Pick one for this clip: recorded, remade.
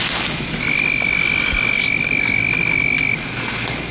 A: recorded